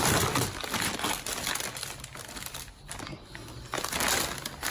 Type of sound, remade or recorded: recorded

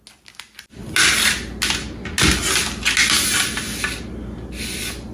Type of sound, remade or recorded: recorded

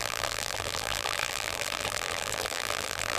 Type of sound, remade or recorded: remade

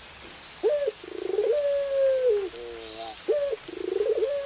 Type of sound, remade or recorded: recorded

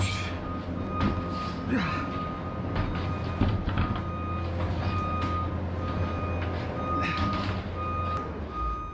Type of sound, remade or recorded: recorded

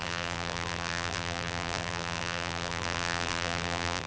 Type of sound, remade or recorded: remade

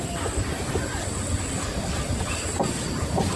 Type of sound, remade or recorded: remade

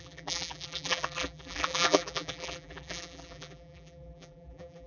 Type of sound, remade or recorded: remade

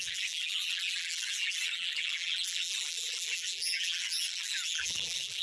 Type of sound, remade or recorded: remade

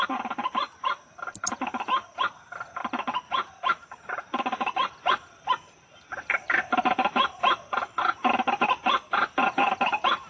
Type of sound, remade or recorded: recorded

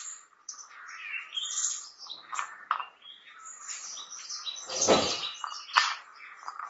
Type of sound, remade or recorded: remade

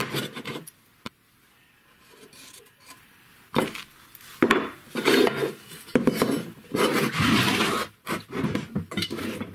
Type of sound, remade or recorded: remade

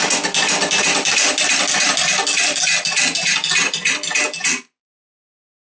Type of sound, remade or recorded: recorded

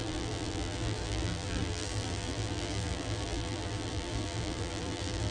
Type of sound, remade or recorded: remade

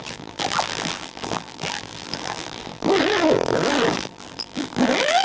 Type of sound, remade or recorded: remade